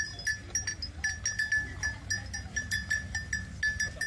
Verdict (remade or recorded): recorded